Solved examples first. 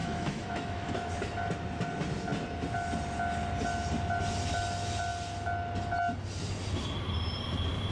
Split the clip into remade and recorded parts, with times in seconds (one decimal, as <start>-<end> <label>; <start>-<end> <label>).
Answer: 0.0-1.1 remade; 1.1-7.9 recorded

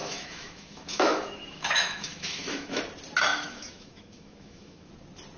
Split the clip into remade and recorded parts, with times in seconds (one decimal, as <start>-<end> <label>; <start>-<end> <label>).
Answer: 0.0-2.8 remade; 2.8-3.3 recorded; 3.3-4.9 remade; 4.9-5.4 recorded

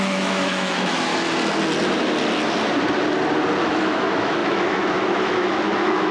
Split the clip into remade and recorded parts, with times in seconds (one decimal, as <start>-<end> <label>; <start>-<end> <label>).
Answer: 0.0-1.1 remade; 1.1-3.6 recorded; 3.6-6.1 remade

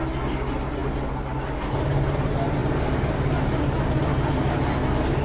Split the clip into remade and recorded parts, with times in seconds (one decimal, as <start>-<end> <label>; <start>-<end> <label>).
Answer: 0.0-5.2 recorded

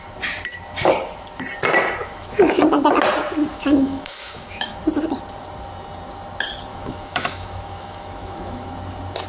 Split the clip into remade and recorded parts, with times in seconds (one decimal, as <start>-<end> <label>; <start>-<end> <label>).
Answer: 0.0-2.0 recorded; 2.0-2.6 remade; 2.6-3.5 recorded; 3.5-4.8 remade; 4.8-6.7 recorded; 6.7-8.7 remade; 8.7-9.3 recorded

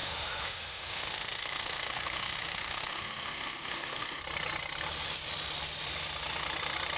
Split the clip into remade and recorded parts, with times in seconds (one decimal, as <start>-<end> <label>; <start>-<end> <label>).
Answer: 0.0-4.2 remade; 4.2-7.0 recorded

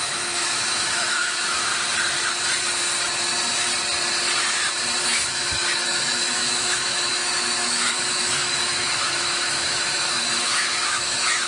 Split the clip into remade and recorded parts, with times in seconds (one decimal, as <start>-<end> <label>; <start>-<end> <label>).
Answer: 0.0-1.7 remade; 1.7-5.0 recorded; 5.0-11.5 remade